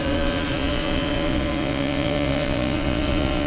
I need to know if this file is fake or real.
fake